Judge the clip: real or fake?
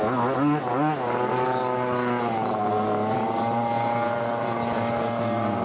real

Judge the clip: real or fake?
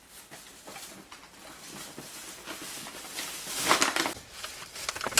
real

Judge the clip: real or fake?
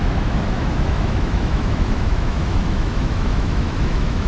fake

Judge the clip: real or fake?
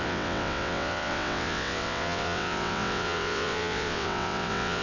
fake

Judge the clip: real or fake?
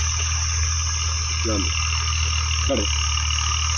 real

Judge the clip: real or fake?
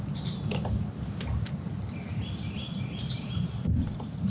real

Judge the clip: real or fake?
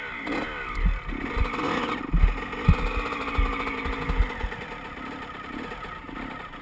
real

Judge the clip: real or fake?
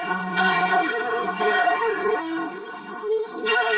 fake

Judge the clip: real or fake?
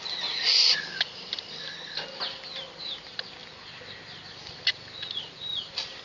real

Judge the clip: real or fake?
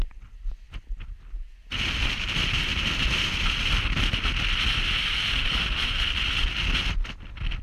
real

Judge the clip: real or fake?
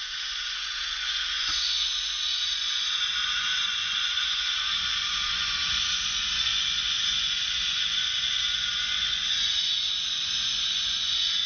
fake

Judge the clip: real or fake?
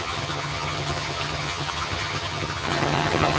fake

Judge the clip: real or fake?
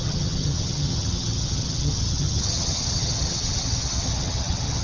fake